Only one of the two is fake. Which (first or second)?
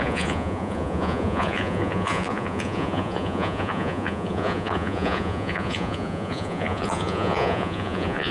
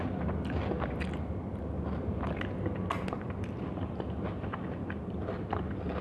first